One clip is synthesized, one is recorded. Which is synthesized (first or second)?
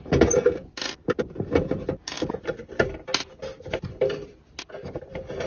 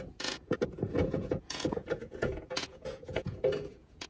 second